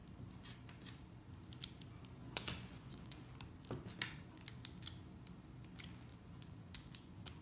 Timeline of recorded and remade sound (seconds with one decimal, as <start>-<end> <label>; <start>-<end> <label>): 0.0-2.2 recorded; 2.2-3.2 remade; 3.2-6.1 recorded; 6.1-7.4 remade